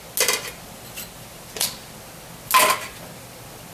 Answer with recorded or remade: recorded